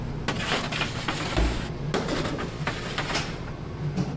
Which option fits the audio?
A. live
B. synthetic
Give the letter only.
A